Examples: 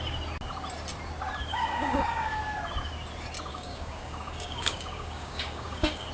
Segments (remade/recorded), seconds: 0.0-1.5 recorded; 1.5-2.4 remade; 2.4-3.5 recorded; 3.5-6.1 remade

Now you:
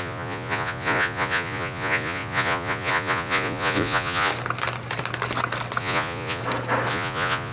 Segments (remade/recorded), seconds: 0.0-4.3 remade; 4.3-5.8 recorded; 5.8-6.4 remade; 6.4-6.9 recorded; 6.9-7.5 remade

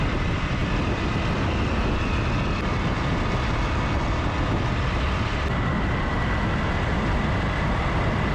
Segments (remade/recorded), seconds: 0.0-8.3 recorded

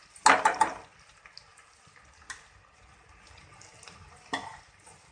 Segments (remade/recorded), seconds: 0.0-5.1 recorded

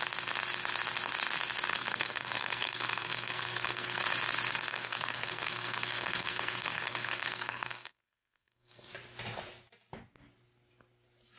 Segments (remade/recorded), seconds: 0.0-1.7 recorded; 1.7-4.0 remade; 4.0-4.7 recorded; 4.7-8.9 remade; 8.9-11.4 recorded

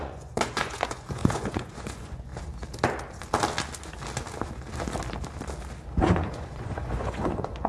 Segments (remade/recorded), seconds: 0.0-2.3 remade; 2.3-5.9 recorded; 5.9-7.7 remade